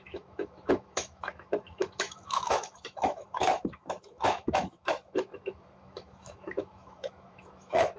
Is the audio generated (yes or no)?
yes